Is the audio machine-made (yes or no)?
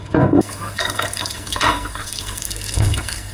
yes